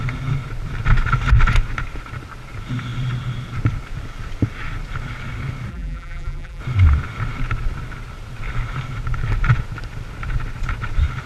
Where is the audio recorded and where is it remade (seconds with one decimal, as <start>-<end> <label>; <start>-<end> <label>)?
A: 0.0-5.7 recorded; 5.7-6.6 remade; 6.6-11.3 recorded